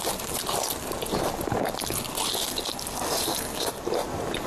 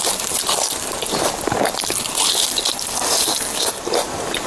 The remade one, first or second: second